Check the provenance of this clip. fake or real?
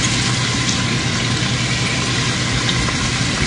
real